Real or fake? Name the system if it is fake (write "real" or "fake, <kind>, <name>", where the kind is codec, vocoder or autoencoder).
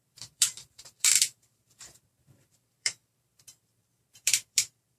fake, vocoder, BigVGAN v2